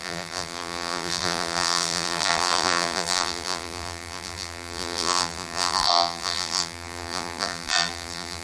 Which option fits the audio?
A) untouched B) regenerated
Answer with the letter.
B